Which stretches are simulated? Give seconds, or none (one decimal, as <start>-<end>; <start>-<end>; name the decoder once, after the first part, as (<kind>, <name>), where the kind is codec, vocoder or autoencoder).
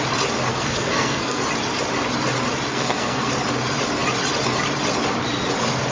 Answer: 0.5-1.4 (codec, SNAC); 2.7-3.3